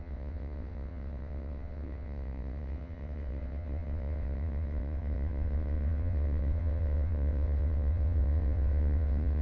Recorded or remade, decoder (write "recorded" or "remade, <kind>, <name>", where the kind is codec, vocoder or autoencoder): remade, vocoder, WaveNeXt